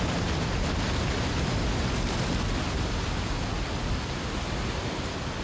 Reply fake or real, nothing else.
real